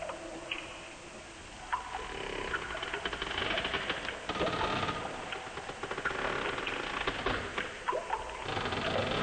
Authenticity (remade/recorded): recorded